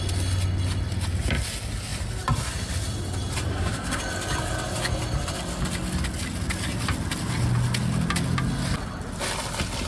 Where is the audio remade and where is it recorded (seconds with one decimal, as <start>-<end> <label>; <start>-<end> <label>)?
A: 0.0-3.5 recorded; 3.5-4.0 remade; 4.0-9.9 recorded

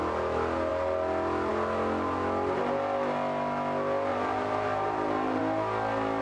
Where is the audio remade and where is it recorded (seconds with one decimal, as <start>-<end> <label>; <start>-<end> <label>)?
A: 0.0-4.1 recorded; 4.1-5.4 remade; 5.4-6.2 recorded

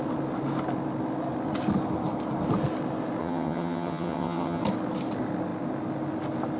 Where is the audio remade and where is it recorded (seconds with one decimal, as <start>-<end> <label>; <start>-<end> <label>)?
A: 0.0-3.2 recorded; 3.2-4.6 remade; 4.6-6.6 recorded